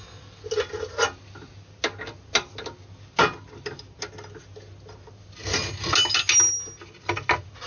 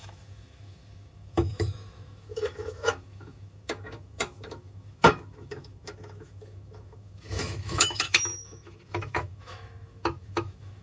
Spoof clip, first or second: second